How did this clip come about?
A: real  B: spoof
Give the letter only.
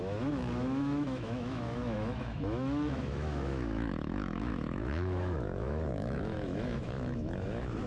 B